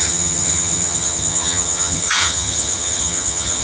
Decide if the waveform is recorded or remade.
remade